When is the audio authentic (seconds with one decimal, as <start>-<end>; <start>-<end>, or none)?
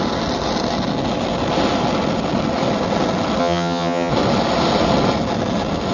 0.0-3.4; 4.1-5.9